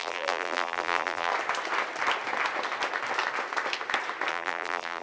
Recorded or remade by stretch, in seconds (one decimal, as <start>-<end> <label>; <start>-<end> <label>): 0.0-1.3 remade; 1.3-4.3 recorded; 4.3-5.0 remade